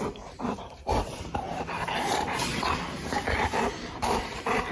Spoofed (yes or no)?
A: yes